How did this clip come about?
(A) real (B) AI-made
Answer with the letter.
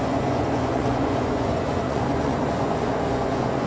B